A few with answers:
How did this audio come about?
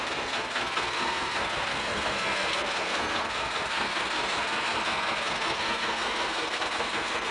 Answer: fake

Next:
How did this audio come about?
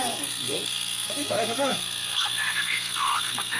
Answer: fake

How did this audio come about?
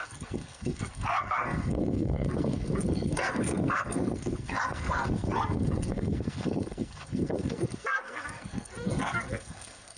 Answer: fake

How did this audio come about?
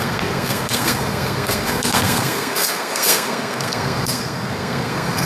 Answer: fake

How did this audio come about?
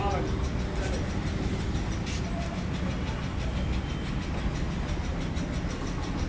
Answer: real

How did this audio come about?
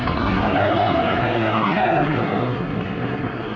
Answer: fake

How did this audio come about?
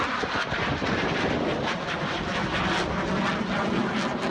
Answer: real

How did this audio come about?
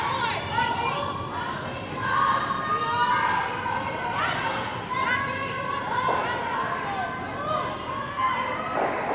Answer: real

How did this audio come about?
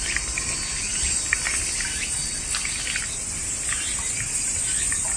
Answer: real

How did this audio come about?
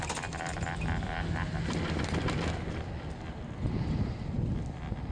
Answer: real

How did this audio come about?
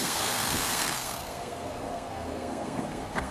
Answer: fake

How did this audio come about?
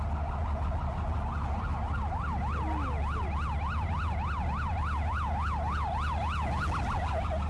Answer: real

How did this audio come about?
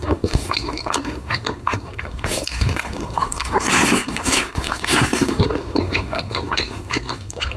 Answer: fake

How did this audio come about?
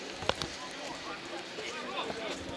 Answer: real